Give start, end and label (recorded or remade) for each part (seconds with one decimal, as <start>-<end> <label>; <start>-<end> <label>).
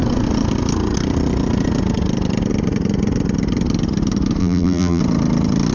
0.0-4.4 recorded; 4.4-5.0 remade; 5.0-5.7 recorded